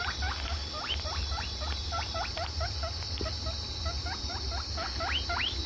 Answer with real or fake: real